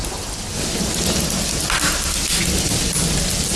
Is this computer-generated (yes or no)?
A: no